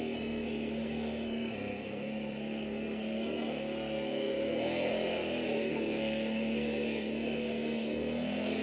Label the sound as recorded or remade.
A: remade